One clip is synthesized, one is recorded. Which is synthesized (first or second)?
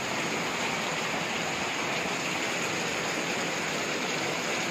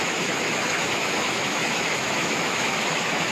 second